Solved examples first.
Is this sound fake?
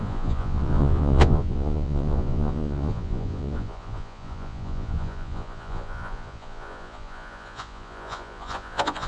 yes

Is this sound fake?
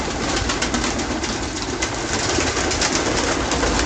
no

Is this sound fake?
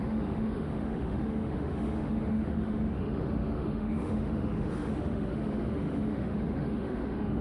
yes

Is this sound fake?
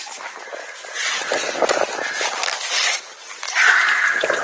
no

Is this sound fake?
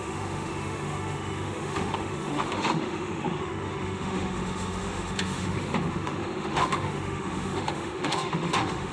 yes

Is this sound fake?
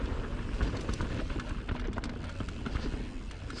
no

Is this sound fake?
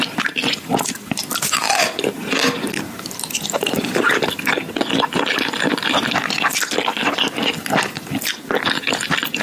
no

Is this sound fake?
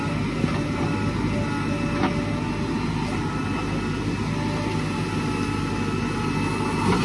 no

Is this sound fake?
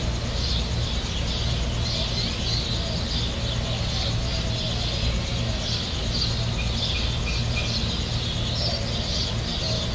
no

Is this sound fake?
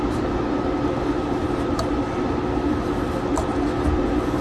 no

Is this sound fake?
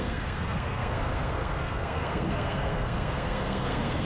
yes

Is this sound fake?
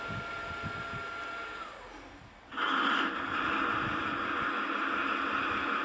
no